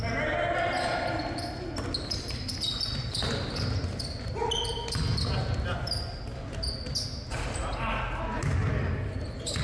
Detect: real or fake real